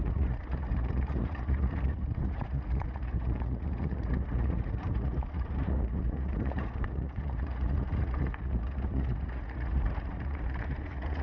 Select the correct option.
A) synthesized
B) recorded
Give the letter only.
A